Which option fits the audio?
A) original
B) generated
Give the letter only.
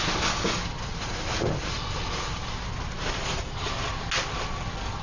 A